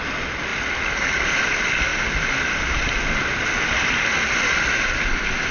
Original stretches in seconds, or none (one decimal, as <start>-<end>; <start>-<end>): 0.0-5.5